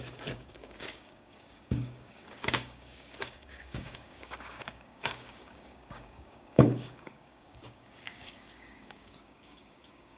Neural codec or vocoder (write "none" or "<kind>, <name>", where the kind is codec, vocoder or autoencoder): codec, DAC